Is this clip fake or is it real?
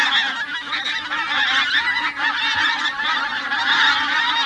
real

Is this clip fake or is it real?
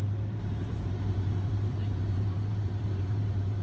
fake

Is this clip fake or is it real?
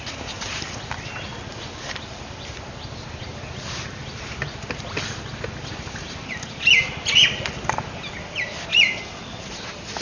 real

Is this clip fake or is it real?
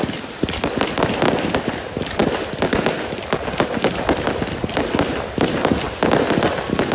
real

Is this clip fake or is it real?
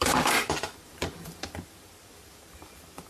fake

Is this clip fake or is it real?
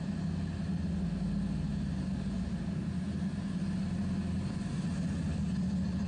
real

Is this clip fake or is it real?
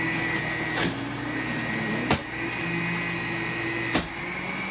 real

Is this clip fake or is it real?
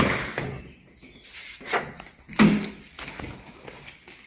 real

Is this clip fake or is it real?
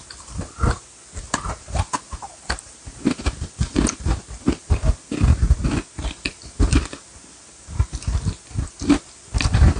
real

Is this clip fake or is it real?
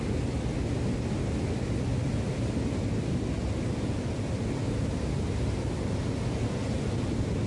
real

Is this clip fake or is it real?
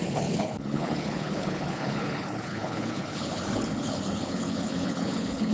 fake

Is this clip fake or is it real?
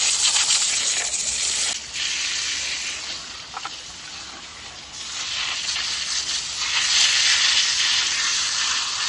real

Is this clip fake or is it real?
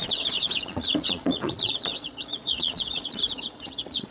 fake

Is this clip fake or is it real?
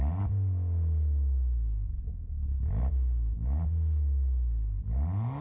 real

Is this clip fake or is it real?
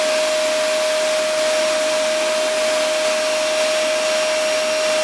real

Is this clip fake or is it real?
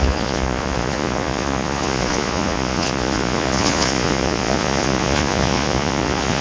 fake